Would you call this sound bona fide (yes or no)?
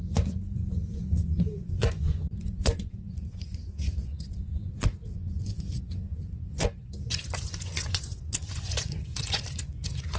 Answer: no